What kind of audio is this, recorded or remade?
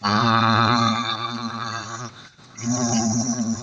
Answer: remade